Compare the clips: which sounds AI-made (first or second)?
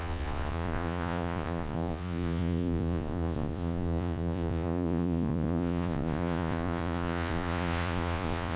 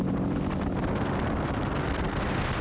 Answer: first